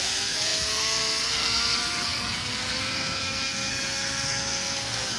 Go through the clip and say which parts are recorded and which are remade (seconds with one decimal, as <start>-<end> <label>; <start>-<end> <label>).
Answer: 0.0-5.2 remade